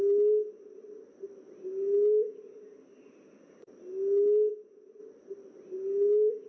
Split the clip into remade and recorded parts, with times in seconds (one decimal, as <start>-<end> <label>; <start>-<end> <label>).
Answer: 0.0-6.5 recorded